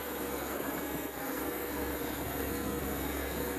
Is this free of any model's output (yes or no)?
no